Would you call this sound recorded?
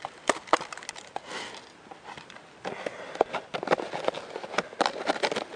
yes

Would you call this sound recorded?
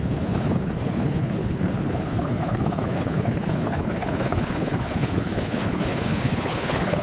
no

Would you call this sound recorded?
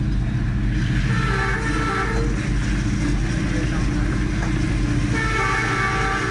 yes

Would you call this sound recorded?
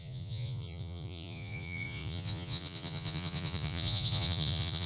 no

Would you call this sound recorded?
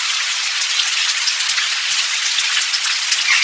no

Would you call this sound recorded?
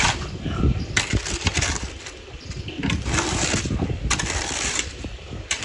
no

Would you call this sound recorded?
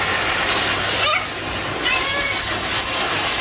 yes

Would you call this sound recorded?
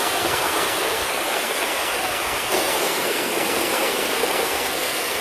no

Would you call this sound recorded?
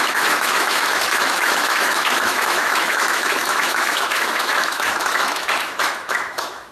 no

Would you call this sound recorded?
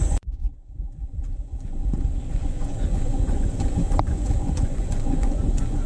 no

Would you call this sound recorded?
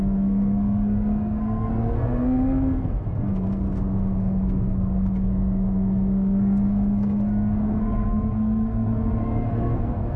no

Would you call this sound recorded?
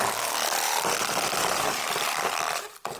no